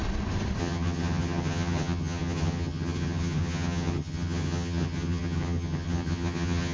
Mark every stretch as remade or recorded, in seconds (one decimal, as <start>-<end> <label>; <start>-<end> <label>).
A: 0.0-0.6 recorded; 0.6-6.7 remade